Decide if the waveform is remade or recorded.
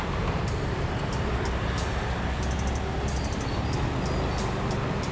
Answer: recorded